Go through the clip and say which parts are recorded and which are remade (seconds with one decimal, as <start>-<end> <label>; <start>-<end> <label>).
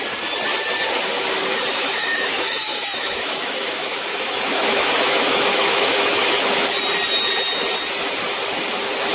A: 0.0-1.8 recorded; 1.8-6.8 remade; 6.8-9.1 recorded